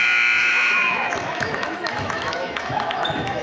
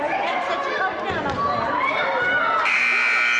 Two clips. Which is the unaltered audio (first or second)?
second